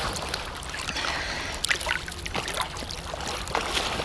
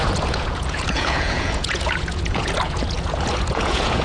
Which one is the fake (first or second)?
second